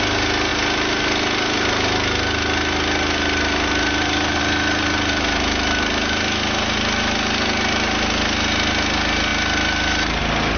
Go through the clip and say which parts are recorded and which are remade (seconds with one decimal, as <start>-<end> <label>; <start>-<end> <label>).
0.0-10.6 recorded